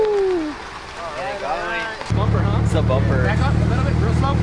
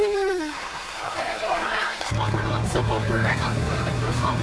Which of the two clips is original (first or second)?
first